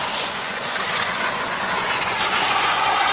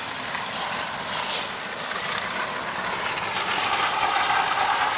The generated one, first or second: first